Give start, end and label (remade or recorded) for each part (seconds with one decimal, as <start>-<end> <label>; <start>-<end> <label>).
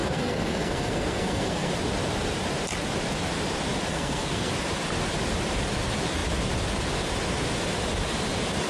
0.0-1.7 remade; 1.7-3.9 recorded; 3.9-4.5 remade; 4.5-8.7 recorded